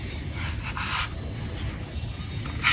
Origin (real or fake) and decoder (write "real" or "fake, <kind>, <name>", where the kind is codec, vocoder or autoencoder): real